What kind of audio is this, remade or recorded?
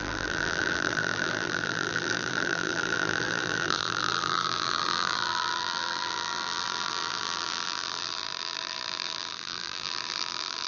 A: remade